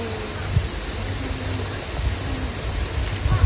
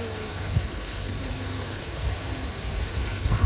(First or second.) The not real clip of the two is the second